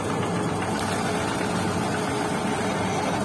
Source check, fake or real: real